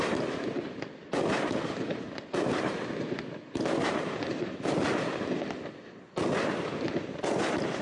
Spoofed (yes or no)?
no